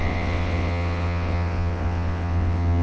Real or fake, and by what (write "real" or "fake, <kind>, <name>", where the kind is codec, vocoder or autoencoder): fake, vocoder, WaveNeXt